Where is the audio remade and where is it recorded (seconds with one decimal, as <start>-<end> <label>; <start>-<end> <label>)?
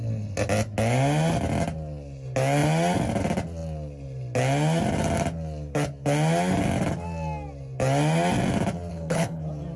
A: 0.0-8.9 recorded; 8.9-9.4 remade; 9.4-9.8 recorded